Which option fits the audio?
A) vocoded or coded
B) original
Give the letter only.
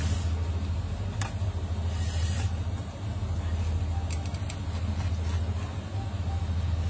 B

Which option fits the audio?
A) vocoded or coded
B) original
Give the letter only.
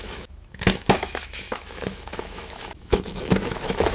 A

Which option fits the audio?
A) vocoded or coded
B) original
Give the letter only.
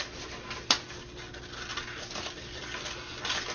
B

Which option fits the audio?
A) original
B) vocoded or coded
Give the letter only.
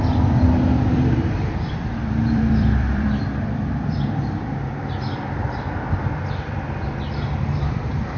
B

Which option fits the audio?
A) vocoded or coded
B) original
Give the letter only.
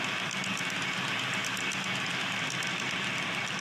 B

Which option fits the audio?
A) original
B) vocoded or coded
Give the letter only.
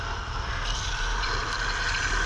A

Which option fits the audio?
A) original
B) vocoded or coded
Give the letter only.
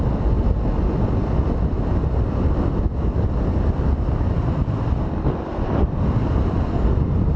A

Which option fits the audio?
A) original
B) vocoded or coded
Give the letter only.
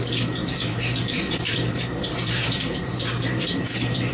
B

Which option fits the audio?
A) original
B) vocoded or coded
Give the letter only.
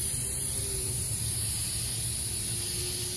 A